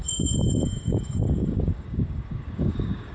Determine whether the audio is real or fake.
fake